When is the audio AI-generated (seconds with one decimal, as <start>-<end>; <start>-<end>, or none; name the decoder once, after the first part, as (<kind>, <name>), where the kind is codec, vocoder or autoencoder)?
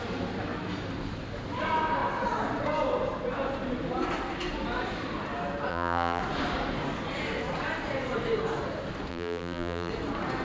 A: 5.7-6.2 (vocoder, BigVGAN v2); 9.1-9.9